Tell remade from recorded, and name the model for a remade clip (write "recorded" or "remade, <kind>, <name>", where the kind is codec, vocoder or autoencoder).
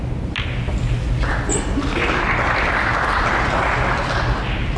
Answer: recorded